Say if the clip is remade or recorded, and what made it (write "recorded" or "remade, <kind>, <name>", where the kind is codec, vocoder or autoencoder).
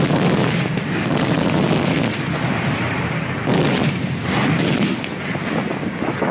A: recorded